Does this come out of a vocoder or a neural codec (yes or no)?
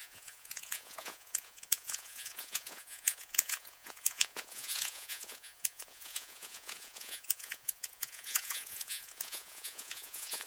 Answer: yes